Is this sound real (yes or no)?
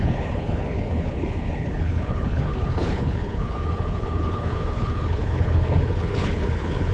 no